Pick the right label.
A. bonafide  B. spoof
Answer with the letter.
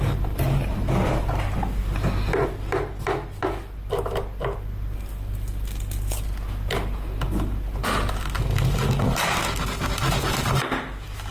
A